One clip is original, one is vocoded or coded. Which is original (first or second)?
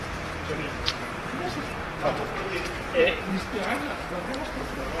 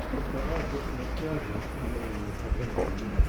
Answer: second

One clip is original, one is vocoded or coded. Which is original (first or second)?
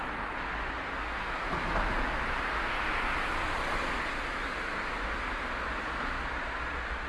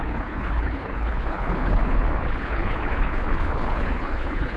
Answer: first